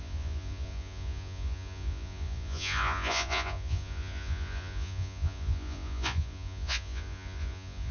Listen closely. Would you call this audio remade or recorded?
remade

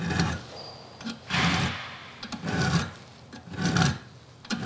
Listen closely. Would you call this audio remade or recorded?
recorded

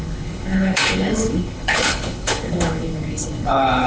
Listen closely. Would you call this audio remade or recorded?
remade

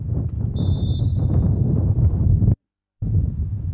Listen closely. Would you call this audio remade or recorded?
remade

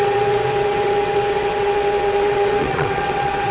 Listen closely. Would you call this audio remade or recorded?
remade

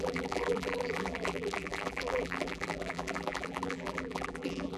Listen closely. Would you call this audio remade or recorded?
remade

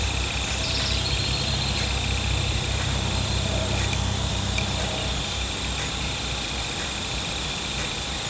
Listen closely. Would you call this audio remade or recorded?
remade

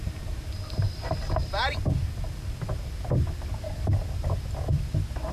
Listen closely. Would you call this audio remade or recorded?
recorded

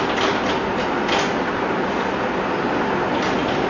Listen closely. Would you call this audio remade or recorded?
recorded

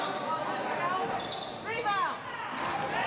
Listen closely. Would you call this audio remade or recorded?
recorded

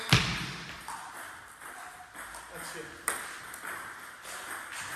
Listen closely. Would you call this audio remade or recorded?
recorded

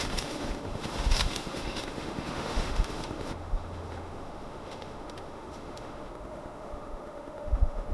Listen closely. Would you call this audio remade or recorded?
remade